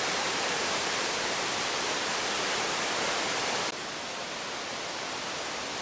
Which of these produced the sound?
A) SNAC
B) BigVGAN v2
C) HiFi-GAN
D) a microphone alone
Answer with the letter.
B